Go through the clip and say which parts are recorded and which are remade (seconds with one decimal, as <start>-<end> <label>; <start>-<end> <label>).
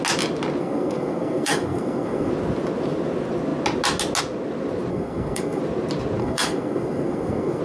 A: 0.0-0.6 recorded; 0.6-2.3 remade; 2.3-4.9 recorded; 4.9-5.6 remade; 5.6-6.2 recorded; 6.2-7.6 remade